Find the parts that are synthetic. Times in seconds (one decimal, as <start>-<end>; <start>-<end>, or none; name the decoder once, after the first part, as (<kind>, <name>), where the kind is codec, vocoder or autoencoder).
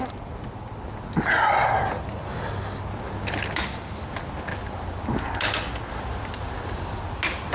none